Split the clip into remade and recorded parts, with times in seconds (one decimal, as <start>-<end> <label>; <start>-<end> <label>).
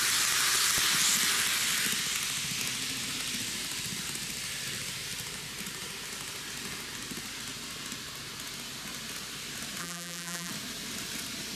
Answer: 0.0-9.8 recorded; 9.8-10.5 remade; 10.5-11.6 recorded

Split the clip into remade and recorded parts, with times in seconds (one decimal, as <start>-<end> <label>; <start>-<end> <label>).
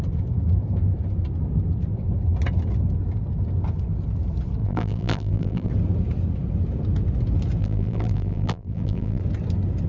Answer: 0.0-4.6 recorded; 4.6-5.7 remade; 5.7-7.6 recorded; 7.6-9.2 remade; 9.2-9.9 recorded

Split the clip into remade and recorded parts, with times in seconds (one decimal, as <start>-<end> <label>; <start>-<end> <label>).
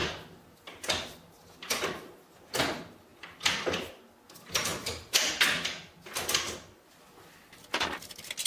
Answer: 0.0-2.6 remade; 2.6-3.1 recorded; 3.1-4.0 remade; 4.0-8.5 recorded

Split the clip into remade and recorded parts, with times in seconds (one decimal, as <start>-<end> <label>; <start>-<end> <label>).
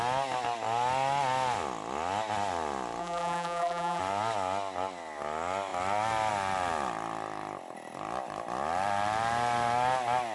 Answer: 0.0-3.0 recorded; 3.0-4.0 remade; 4.0-10.3 recorded